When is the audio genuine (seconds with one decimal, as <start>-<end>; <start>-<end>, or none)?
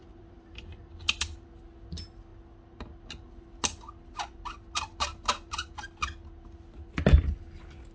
0.8-7.9